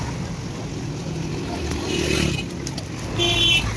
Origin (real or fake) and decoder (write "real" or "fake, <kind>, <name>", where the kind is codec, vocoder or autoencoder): real